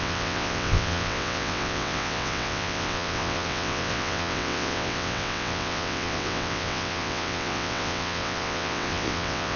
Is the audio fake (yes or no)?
yes